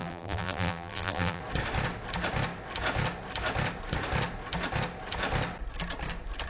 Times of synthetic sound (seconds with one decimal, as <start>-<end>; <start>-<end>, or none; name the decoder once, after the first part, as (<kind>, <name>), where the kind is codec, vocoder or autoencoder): 0.0-1.4 (vocoder, BigVGAN v2)